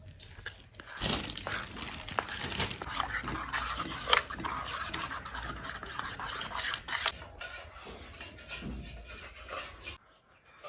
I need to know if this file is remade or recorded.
recorded